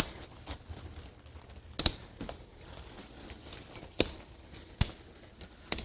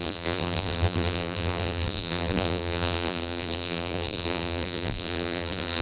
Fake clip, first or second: second